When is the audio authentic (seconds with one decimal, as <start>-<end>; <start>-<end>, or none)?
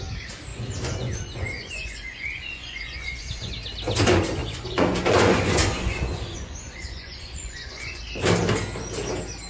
0.0-0.5; 3.5-4.4; 8.0-9.5